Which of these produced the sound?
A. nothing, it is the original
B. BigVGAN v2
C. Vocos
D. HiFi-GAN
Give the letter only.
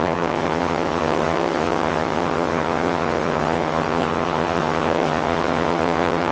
D